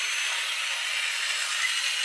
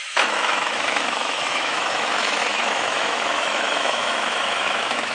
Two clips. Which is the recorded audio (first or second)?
first